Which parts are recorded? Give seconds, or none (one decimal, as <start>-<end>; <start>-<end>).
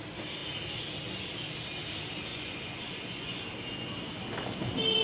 0.0-2.3; 3.4-5.0